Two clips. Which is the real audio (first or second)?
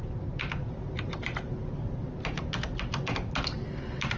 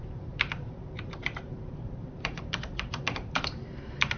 first